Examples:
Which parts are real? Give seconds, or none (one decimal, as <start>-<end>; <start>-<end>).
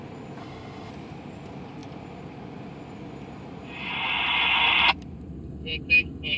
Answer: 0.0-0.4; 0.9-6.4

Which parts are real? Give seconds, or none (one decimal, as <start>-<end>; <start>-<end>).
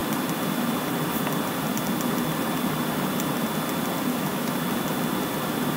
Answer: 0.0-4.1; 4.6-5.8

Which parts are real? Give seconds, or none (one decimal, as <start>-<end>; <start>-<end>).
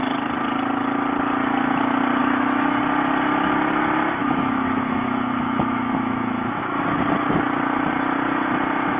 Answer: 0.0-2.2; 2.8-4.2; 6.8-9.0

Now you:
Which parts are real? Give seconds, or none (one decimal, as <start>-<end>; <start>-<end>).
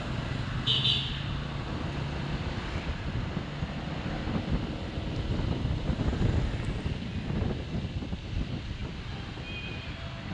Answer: 0.0-10.3